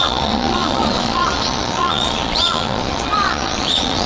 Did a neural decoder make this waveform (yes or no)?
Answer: yes